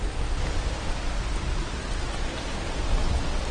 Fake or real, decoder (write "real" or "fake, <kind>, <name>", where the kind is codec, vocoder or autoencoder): real